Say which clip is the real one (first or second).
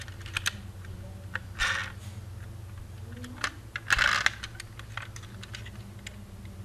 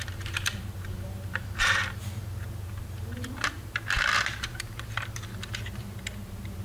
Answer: first